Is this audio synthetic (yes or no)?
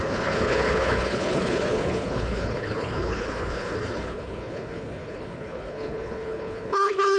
yes